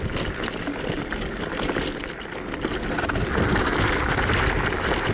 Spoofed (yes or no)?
no